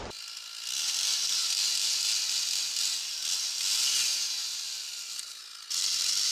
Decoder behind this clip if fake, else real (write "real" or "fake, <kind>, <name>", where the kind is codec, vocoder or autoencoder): real